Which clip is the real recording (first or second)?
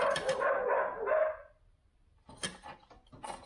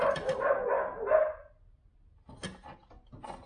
second